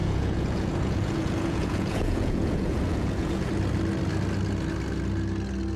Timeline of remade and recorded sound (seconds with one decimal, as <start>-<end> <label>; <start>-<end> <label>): 0.0-3.5 remade; 3.5-5.8 recorded